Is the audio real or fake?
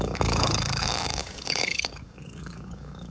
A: fake